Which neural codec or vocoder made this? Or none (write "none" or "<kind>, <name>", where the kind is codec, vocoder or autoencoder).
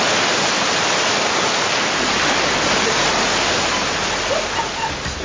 none